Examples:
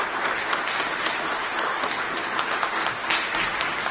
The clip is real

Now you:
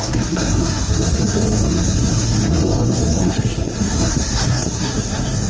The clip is fake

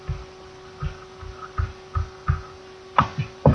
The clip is real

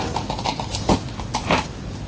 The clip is real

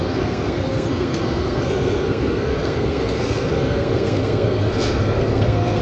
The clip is fake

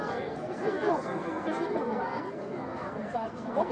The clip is fake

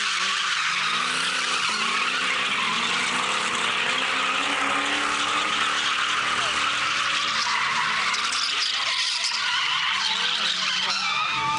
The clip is real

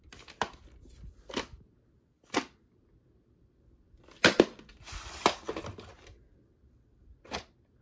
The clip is real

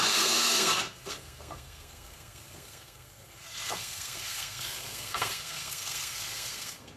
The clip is fake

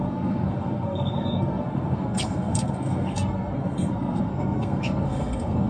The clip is fake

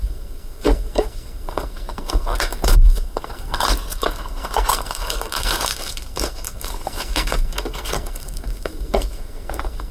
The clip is fake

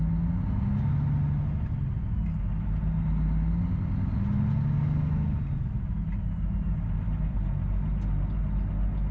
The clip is real